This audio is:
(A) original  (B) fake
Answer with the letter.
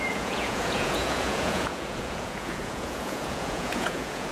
B